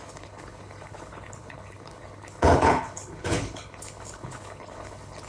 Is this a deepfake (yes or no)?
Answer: yes